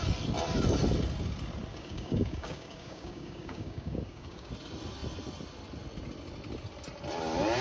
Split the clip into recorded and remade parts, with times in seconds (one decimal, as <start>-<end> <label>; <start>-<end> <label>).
0.0-1.7 recorded; 1.7-4.5 remade; 4.5-7.6 recorded